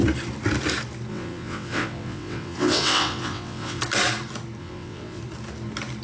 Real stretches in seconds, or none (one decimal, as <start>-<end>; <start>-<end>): 0.0-1.1; 3.8-4.6; 5.2-6.0